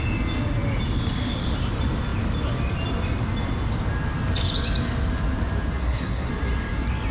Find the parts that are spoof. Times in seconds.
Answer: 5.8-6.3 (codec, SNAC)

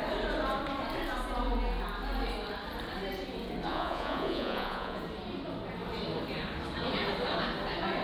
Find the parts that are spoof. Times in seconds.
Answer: 3.7-5.0 (vocoder, Vocos)